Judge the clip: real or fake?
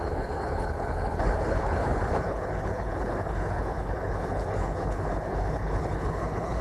fake